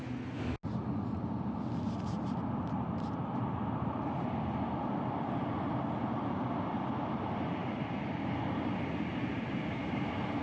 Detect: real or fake real